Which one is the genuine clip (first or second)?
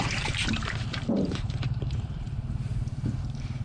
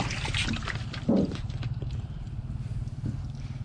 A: second